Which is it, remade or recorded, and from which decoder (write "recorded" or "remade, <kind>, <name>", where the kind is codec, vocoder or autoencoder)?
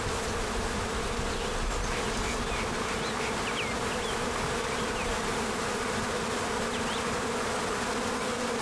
recorded